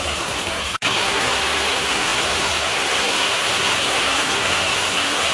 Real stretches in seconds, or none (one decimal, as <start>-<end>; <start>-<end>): none